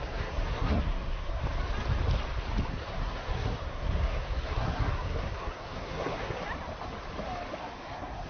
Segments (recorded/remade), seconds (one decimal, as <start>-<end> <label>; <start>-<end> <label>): 0.0-1.4 remade; 1.4-2.7 recorded; 2.7-6.4 remade; 6.4-7.6 recorded; 7.6-8.3 remade